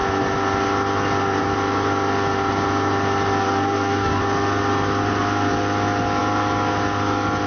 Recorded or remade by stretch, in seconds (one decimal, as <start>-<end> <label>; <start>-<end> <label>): 0.0-3.4 recorded; 3.4-4.2 remade; 4.2-7.5 recorded